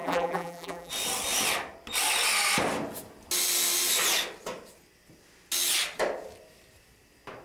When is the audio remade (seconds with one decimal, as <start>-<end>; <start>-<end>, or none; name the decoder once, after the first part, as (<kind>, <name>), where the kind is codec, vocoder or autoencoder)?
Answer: 0.0-0.9 (vocoder, BigVGAN v2)